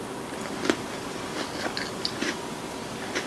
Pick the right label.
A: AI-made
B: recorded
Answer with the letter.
A